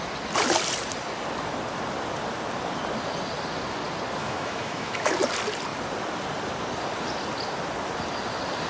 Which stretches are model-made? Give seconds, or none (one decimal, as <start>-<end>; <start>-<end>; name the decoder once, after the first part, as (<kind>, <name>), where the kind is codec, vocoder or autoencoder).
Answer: 4.2-5.1 (autoencoder, DAC-VAE)